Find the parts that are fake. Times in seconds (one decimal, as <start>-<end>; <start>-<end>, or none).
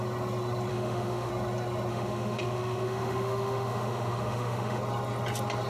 0.7-1.3; 1.9-4.8